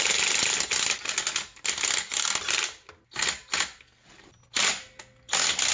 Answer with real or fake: real